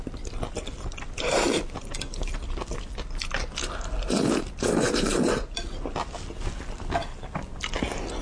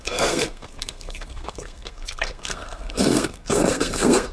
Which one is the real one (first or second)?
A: first